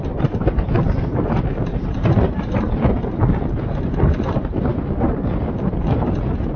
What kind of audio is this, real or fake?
real